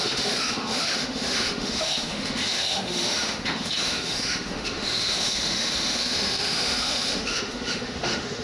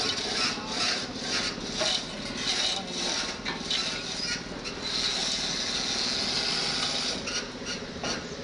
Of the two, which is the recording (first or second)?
second